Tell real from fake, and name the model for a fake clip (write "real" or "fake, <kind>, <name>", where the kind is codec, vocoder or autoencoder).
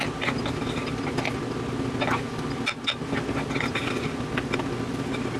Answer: real